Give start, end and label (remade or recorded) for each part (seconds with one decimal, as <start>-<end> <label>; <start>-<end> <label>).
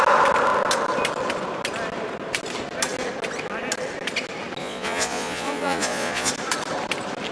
0.0-4.6 recorded; 4.6-6.3 remade; 6.3-7.3 recorded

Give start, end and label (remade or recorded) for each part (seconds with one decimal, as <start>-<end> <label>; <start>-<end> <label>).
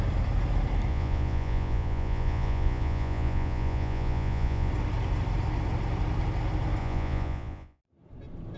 0.0-0.9 recorded; 0.9-4.7 remade; 4.7-6.8 recorded; 6.8-7.8 remade; 7.8-8.6 recorded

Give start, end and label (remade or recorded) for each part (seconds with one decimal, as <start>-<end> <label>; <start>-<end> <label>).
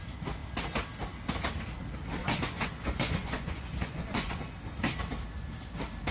0.0-2.2 recorded; 2.2-4.4 remade; 4.4-6.1 recorded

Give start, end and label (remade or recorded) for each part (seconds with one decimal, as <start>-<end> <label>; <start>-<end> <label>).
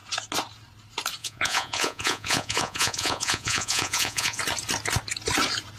0.0-1.2 recorded; 1.2-4.4 remade; 4.4-5.8 recorded